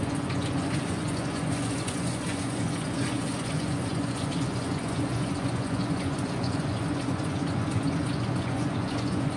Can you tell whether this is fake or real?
fake